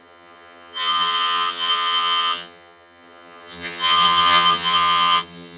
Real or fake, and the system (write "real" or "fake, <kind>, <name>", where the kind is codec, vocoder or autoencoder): fake, vocoder, HiFi-GAN